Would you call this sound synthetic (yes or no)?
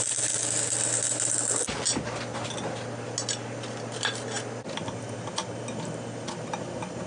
no